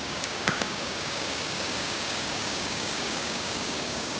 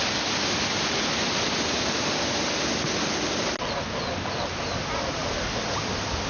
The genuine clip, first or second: second